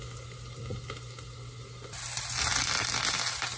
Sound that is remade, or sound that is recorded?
recorded